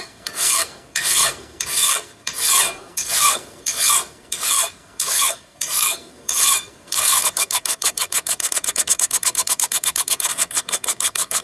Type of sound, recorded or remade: remade